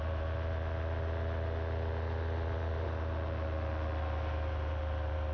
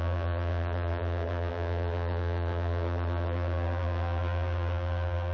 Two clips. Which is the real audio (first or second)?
first